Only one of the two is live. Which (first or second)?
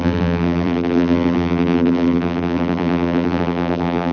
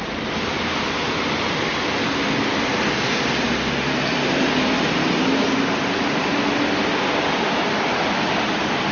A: second